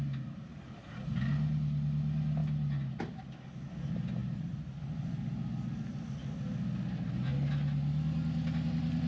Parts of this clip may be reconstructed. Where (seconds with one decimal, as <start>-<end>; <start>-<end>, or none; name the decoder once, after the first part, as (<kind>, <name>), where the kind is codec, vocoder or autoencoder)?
0.5-1.1 (vocoder, BigVGAN v2); 4.2-4.8